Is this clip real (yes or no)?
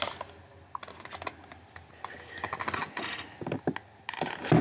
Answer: yes